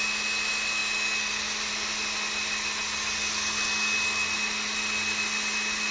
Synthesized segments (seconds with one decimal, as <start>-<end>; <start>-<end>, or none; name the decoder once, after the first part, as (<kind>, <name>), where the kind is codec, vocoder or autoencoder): none